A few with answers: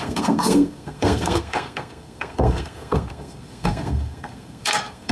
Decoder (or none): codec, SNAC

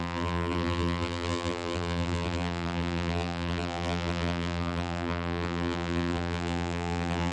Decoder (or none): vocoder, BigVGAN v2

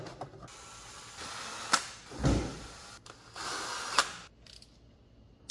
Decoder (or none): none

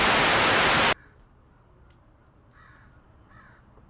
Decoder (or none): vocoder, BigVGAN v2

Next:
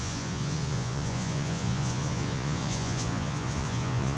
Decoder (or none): vocoder, Vocos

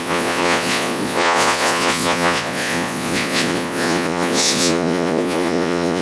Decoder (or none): vocoder, Vocos